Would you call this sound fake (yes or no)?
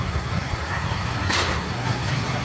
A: yes